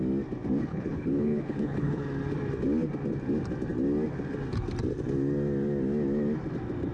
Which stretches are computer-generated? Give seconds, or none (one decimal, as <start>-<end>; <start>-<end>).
0.7-2.0